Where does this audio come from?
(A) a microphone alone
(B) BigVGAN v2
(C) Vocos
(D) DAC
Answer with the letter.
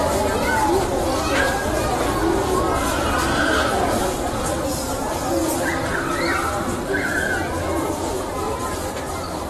A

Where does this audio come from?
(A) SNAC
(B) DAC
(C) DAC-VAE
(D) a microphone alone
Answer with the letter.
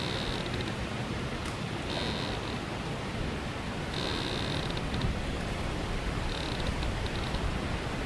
D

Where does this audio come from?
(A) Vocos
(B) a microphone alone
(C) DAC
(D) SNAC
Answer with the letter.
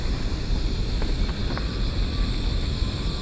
B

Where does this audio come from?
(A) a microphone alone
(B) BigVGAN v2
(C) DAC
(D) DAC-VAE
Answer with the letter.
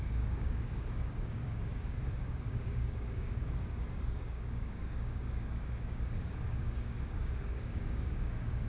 C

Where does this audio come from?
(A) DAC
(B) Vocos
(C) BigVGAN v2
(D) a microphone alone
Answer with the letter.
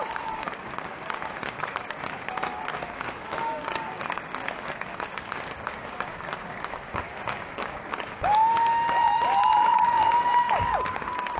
A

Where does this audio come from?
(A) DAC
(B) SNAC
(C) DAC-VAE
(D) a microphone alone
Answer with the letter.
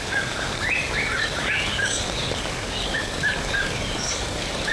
A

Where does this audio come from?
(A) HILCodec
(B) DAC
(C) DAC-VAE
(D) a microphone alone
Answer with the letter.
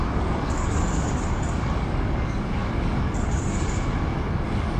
B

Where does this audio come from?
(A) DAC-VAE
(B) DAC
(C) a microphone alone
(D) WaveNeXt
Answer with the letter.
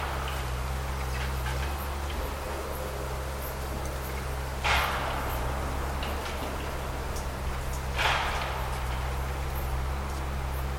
C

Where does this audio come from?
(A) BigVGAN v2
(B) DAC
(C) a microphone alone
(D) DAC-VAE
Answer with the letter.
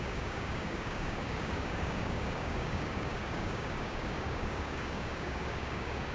B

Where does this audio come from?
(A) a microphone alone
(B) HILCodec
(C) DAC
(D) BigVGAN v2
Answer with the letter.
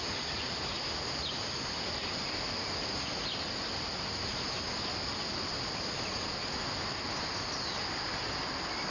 A